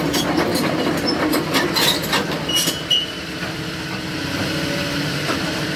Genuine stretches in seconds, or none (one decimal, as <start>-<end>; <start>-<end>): 0.5-1.4; 4.4-5.0

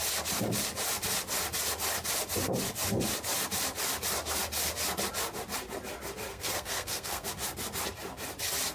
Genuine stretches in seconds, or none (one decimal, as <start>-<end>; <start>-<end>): 0.0-6.3; 7.3-8.7

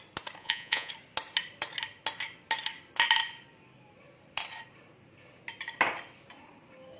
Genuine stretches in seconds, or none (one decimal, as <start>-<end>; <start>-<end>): 0.0-0.4; 0.9-7.0

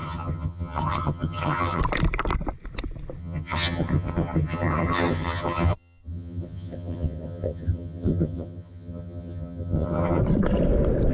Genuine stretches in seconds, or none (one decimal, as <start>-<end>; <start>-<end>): 1.8-3.2; 10.2-11.1

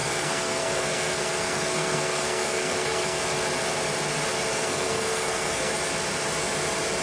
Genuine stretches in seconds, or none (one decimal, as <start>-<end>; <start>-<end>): 3.2-4.5; 5.7-7.0

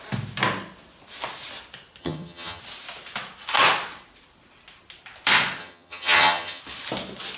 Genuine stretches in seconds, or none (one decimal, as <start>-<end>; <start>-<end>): 0.0-2.0; 2.6-5.6; 6.6-7.4